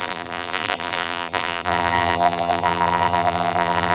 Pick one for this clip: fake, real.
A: fake